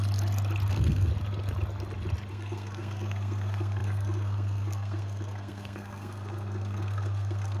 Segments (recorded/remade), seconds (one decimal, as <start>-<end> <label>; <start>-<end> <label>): 0.0-0.7 recorded; 0.7-1.1 remade; 1.1-2.3 recorded; 2.3-7.6 remade